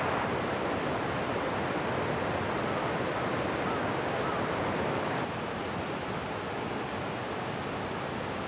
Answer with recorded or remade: recorded